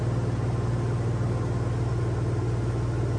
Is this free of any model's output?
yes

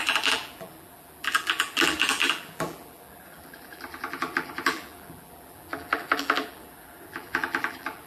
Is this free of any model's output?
no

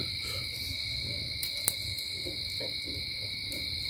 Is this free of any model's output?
yes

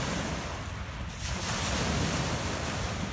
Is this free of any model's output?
yes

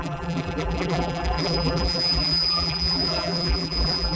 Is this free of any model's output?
no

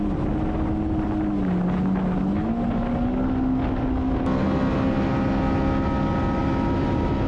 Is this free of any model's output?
yes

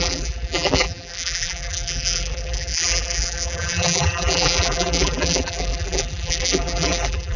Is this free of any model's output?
no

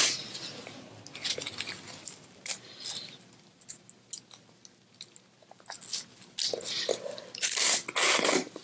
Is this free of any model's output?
yes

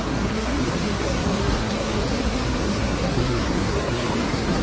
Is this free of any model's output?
no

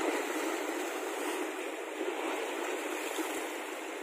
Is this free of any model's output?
yes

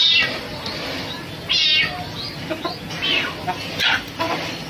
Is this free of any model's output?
yes